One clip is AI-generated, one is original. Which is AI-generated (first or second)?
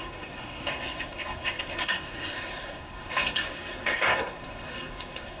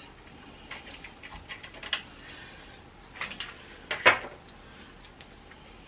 first